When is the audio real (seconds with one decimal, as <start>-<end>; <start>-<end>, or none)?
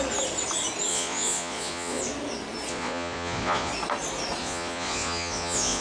0.0-0.9; 2.0-2.7; 3.7-4.4